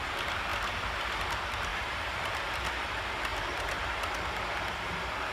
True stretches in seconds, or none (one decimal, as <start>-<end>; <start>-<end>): 0.0-1.7; 2.4-5.3